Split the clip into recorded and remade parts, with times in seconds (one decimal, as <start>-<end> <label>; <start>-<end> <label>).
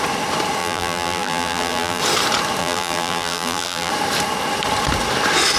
0.0-0.6 recorded; 0.6-2.0 remade; 2.0-2.6 recorded; 2.6-3.9 remade; 3.9-5.6 recorded